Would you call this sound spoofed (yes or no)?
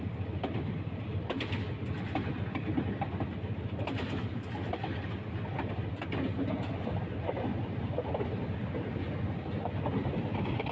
no